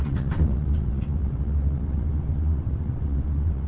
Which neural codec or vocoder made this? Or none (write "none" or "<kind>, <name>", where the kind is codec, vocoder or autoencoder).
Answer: vocoder, WaveNeXt